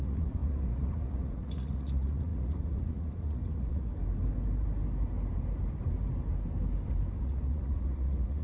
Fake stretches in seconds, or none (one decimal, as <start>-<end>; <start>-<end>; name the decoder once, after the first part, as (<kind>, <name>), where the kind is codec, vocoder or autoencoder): 0.0-3.9 (vocoder, Vocos); 7.2-8.4